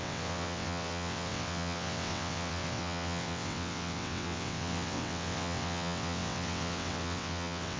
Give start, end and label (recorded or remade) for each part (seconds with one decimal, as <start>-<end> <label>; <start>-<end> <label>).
0.0-7.8 remade